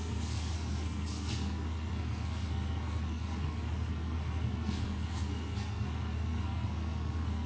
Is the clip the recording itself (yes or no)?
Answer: no